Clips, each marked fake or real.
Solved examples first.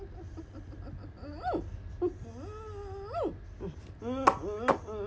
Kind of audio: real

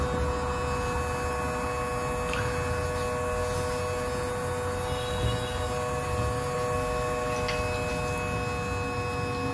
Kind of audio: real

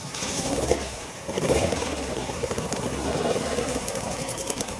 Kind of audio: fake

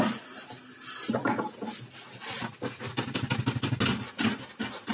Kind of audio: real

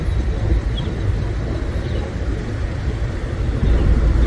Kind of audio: real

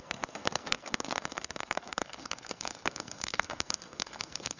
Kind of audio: fake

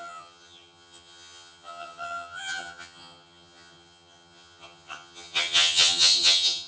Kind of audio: fake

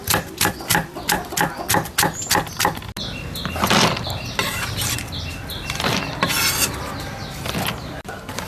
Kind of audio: real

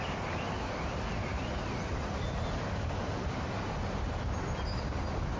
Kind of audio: real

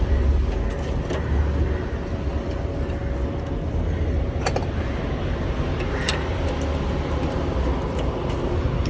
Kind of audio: real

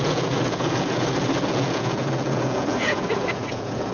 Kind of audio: fake